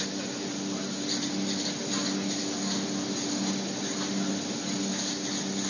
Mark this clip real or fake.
real